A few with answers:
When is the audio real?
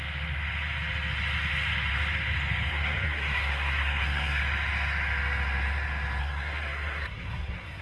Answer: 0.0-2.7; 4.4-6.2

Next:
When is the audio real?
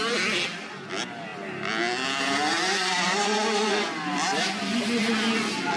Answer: 0.0-5.8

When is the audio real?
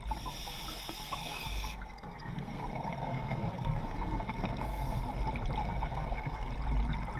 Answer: 0.0-0.7; 5.0-5.6; 6.5-7.2